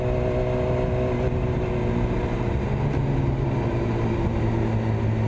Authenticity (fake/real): real